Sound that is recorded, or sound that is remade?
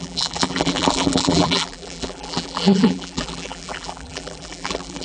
remade